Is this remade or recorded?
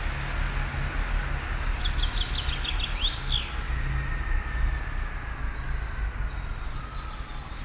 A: recorded